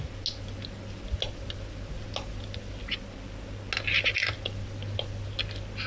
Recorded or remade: recorded